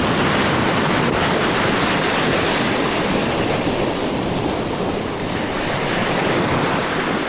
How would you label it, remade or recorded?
recorded